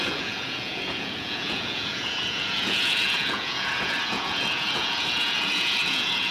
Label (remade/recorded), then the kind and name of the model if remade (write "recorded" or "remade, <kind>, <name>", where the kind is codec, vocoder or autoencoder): remade, vocoder, Vocos